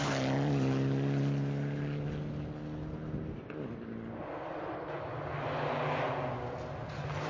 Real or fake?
real